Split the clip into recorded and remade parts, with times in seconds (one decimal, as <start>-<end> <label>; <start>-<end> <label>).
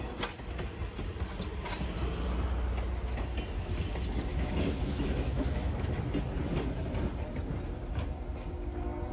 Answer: 0.0-4.3 recorded; 4.3-6.0 remade; 6.0-9.1 recorded